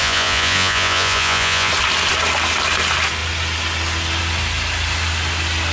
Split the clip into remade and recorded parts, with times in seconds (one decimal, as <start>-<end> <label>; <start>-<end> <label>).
0.0-1.7 remade; 1.7-5.7 recorded